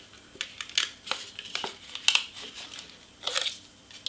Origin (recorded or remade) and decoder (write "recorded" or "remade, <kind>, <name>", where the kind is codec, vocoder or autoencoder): recorded